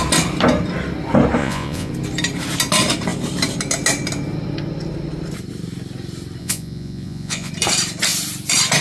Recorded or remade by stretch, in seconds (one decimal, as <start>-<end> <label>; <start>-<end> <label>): 0.0-1.4 recorded; 1.4-1.9 remade; 1.9-6.4 recorded; 6.4-7.5 remade; 7.5-8.8 recorded